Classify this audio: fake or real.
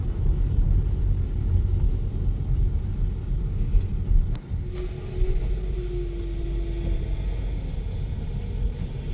real